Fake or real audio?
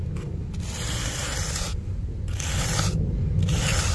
real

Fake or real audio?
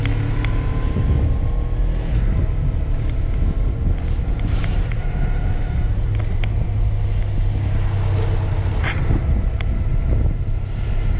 real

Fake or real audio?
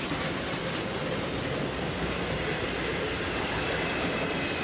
real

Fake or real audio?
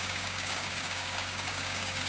fake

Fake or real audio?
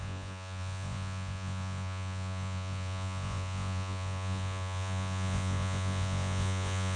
fake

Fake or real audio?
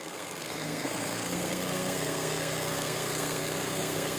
fake